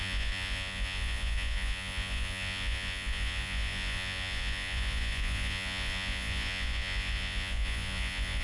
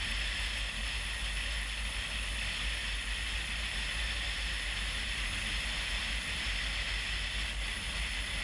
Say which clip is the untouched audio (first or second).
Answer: second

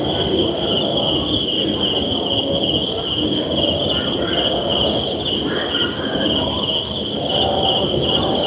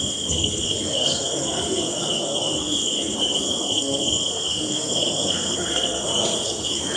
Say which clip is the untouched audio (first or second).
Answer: first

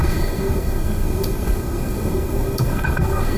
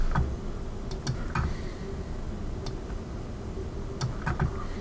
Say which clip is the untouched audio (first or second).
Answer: second